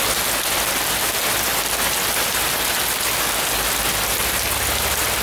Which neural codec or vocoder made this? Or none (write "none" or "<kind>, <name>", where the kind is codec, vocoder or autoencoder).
none